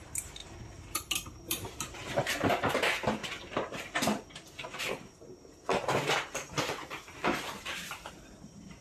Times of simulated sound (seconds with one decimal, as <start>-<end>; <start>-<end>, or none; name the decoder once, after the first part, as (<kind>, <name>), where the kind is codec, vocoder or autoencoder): 0.0-3.2 (vocoder, BigVGAN v2); 4.8-5.7; 6.6-8.8